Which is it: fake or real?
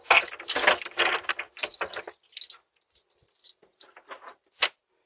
real